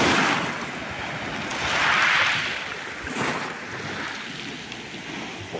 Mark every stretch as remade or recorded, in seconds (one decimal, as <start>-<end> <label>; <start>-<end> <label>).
0.0-5.6 recorded